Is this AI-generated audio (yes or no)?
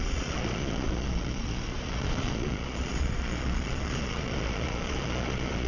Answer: yes